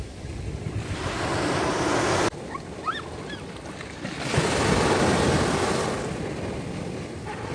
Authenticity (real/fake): real